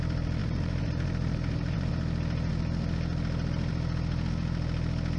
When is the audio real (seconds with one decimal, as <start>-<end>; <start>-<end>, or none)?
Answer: 0.0-0.4; 1.9-5.2